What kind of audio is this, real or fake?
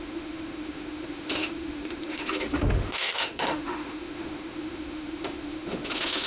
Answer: fake